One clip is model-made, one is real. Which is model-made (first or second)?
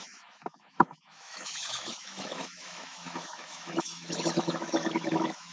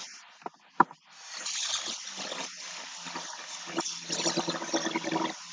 first